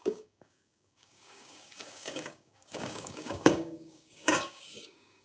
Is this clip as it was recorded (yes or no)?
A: no